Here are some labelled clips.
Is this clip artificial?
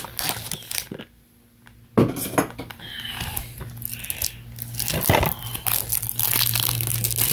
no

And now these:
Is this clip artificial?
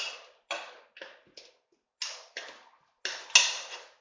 no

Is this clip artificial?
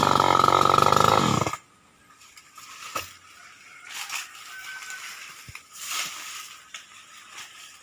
no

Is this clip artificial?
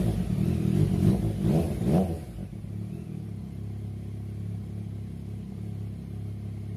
no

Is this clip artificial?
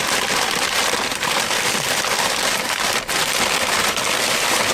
no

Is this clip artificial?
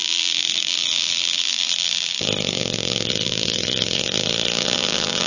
yes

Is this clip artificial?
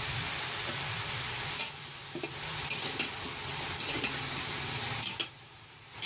yes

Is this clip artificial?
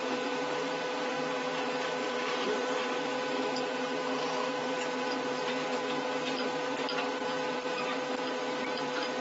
yes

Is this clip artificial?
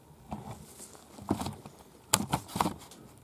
no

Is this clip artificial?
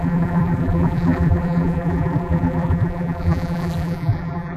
yes